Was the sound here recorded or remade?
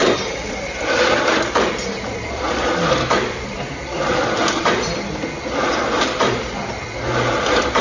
remade